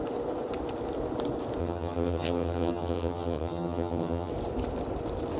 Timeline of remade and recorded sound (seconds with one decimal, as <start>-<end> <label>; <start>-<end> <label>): 0.0-1.6 recorded; 1.6-4.3 remade; 4.3-5.4 recorded